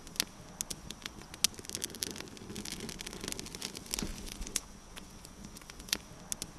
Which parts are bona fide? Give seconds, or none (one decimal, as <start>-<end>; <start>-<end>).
0.0-0.7; 1.3-4.1; 6.1-6.6